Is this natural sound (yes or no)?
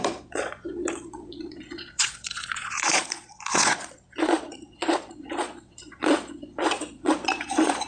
no